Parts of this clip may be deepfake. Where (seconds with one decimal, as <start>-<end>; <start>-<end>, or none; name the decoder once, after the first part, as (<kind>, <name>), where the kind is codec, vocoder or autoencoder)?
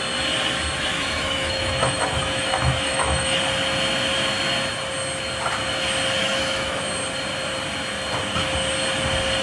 0.9-3.4 (autoencoder, DAC-VAE); 6.2-6.8